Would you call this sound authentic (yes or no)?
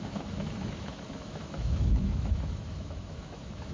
no